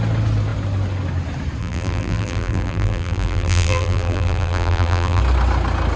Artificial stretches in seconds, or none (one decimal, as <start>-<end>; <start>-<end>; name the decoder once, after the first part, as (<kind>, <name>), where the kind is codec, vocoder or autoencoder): 1.6-5.2 (vocoder, BigVGAN v2)